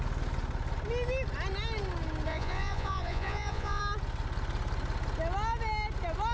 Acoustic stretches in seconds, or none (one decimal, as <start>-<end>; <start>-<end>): 0.0-2.3; 3.8-6.3